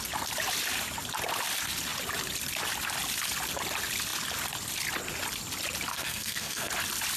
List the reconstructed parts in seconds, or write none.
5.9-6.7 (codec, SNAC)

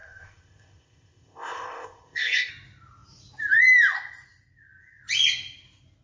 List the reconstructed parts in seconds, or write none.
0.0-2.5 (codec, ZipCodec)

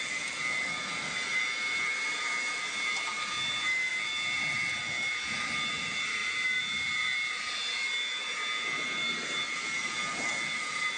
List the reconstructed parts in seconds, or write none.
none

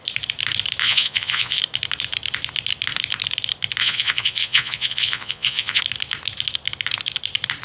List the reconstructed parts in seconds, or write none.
0.8-1.6 (vocoder, Vocos); 3.8-5.8

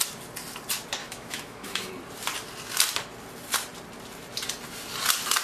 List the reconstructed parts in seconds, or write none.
1.0-1.9 (autoencoder, DAC-VAE)

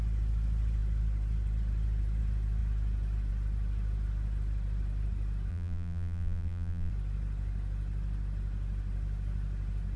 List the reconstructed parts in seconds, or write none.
5.5-6.9 (vocoder, BigVGAN v2)